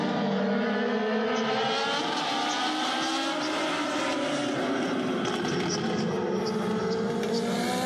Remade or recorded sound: recorded